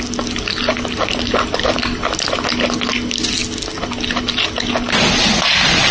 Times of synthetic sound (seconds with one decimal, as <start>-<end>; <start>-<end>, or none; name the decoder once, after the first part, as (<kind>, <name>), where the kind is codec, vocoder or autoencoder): none